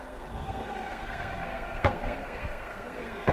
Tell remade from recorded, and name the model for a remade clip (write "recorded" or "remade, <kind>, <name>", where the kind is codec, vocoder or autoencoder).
remade, codec, SNAC